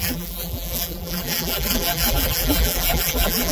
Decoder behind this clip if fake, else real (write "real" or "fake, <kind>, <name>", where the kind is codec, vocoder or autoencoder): fake, vocoder, BigVGAN v2